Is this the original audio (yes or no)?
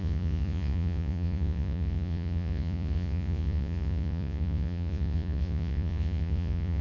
no